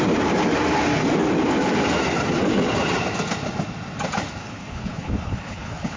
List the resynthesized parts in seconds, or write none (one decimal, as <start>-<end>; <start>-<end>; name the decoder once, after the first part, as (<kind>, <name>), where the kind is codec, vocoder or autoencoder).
4.4-6.0 (codec, HILCodec)

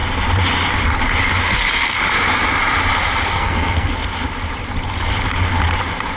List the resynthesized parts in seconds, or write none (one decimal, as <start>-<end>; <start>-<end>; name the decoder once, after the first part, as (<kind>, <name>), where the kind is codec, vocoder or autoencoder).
3.3-3.9 (codec, SNAC)

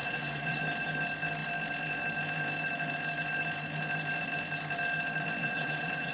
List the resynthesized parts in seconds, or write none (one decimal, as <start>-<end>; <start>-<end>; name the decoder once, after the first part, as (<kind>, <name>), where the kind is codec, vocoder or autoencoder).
0.0-0.6 (vocoder, WaveNeXt); 5.4-6.1